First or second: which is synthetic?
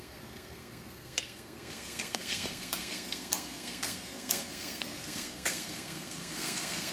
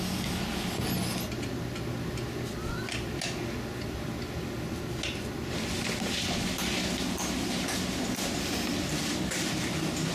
first